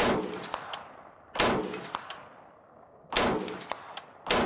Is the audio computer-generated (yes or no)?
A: no